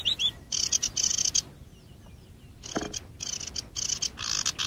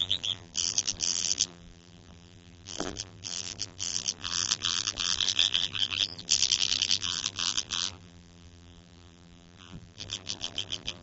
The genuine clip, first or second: first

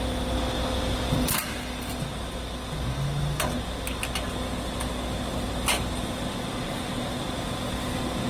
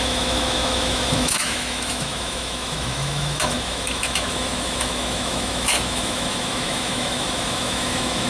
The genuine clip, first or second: first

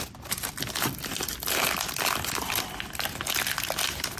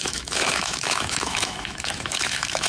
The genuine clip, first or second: first